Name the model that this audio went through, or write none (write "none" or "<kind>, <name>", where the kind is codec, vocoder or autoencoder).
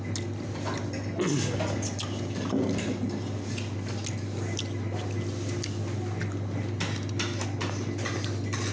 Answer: none